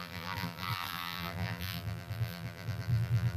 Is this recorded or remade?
remade